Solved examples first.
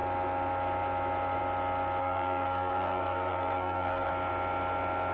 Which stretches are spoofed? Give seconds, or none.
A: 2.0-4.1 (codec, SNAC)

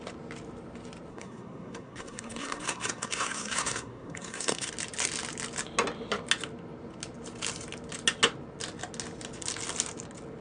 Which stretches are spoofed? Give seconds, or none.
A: 1.1-4.7 (codec, SNAC)

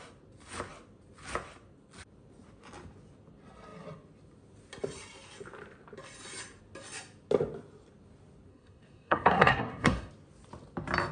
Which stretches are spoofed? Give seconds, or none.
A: 8.5-10.1 (codec, SNAC)

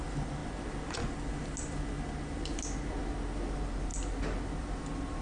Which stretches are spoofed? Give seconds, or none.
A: 0.0-0.4 (vocoder, BigVGAN v2); 3.5-3.9; 4.6-5.2

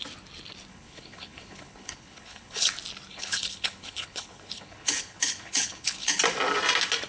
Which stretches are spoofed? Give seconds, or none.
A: 0.7-2.7 (codec, HILCodec); 3.1-6.2

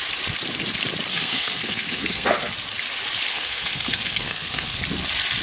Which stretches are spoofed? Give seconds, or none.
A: 1.1-2.5 (codec, SNAC); 3.3-4.8

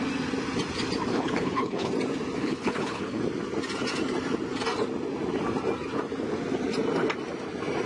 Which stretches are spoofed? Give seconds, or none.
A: 1.1-1.9 (codec, HILCodec); 2.4-3.2